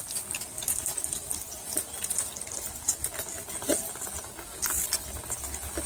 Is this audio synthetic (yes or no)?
no